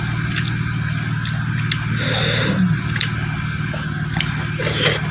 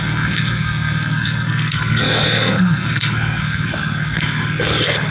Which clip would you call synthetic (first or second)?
second